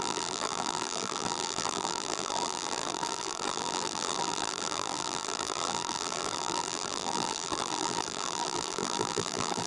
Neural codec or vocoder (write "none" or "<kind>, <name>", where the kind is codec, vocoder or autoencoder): vocoder, BigVGAN v2